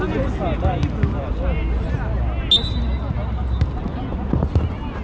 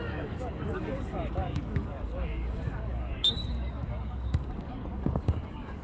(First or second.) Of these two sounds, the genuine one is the first